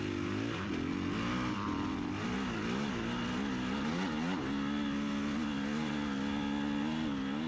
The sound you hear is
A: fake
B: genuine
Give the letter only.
B